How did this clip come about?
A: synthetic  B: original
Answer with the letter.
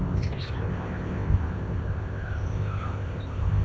A